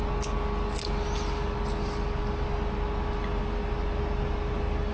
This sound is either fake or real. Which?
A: real